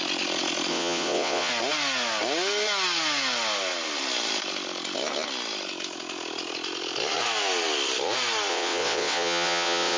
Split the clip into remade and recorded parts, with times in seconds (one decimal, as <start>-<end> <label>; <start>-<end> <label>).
0.0-0.7 recorded; 0.7-1.5 remade; 1.5-8.5 recorded; 8.5-10.0 remade